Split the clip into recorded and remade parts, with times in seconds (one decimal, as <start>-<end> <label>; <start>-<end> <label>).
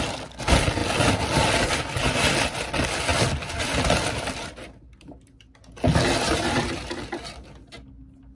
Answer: 0.0-8.3 recorded